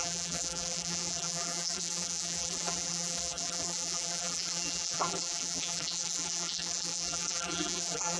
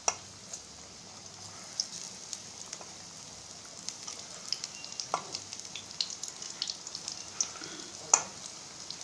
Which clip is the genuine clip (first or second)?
second